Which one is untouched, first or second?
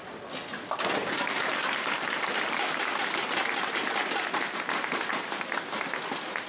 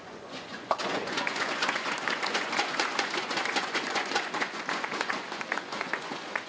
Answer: first